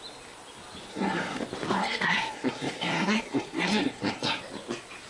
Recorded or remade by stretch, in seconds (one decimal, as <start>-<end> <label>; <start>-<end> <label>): 0.0-0.9 recorded; 0.9-1.4 remade; 1.4-1.8 recorded; 1.8-4.4 remade; 4.4-5.1 recorded